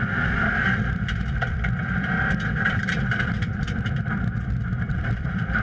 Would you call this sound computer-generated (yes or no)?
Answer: yes